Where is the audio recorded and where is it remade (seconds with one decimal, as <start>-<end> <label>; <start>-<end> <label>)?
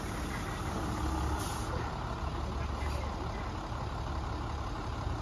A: 0.0-5.2 recorded